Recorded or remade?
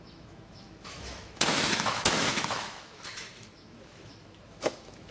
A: remade